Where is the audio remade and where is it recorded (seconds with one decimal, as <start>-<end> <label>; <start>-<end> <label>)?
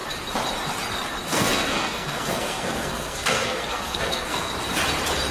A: 0.0-1.3 recorded; 1.3-4.5 remade; 4.5-5.3 recorded